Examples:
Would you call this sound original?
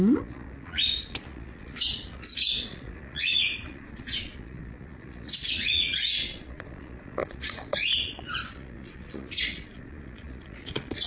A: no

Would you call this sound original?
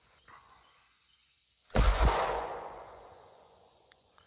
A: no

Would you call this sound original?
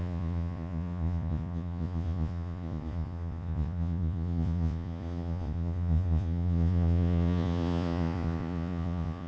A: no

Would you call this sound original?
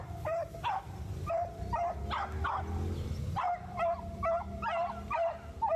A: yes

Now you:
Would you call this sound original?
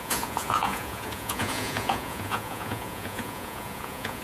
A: no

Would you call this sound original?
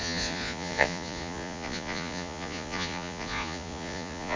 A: no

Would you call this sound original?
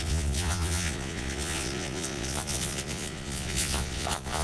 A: no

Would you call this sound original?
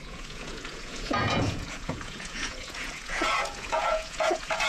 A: no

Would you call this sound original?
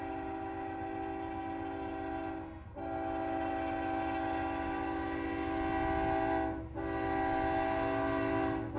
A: yes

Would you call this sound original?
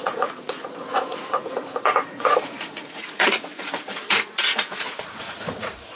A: no